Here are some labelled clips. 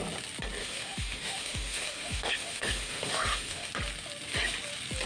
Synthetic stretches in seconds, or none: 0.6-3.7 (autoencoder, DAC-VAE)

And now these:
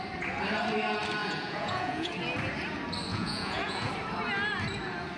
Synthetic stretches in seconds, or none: 1.2-2.1 (vocoder, Vocos); 3.1-3.9

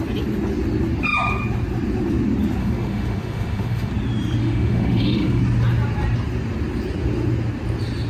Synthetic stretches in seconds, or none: 2.6-3.9 (autoencoder, DAC-VAE); 4.4-5.4

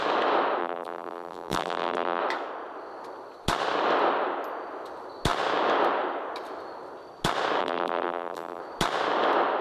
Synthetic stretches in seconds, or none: 0.6-2.2 (vocoder, BigVGAN v2); 7.6-8.6